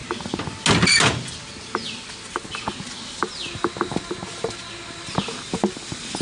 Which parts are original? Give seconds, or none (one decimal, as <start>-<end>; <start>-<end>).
0.0-6.2